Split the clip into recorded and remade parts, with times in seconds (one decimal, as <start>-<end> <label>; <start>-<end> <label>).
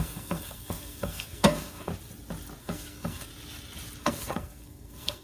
0.0-1.9 remade; 1.9-2.6 recorded; 2.6-3.3 remade; 3.3-4.0 recorded; 4.0-5.2 remade